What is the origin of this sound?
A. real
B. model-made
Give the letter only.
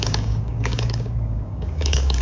B